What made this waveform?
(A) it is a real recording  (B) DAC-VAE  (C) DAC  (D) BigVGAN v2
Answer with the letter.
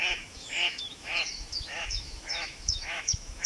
B